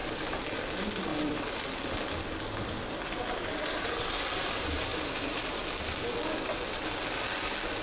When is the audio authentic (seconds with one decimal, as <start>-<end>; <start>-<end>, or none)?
0.6-1.1; 1.8-4.9; 5.7-7.8